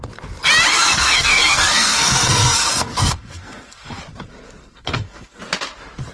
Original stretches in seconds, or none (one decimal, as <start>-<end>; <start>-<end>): 0.0-0.7; 4.0-4.6; 5.4-6.1